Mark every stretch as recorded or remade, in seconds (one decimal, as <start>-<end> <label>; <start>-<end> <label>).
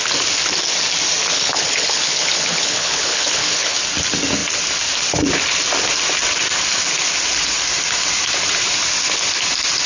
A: 0.0-1.2 recorded; 1.2-3.8 remade; 3.8-9.9 recorded